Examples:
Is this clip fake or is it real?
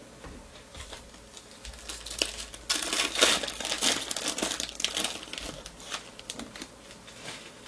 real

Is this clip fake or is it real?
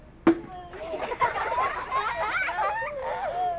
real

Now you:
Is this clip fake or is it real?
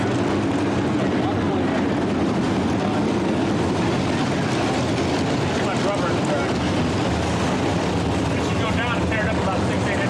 real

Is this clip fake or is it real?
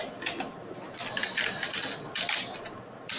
real